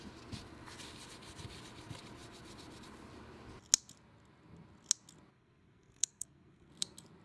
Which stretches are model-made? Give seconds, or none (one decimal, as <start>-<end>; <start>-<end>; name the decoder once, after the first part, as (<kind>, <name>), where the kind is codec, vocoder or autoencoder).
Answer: 5.3-6.7 (codec, SNAC)